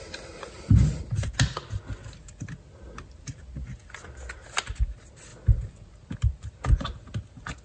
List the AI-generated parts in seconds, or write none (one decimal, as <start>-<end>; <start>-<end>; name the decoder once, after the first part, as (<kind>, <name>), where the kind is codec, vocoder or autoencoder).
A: none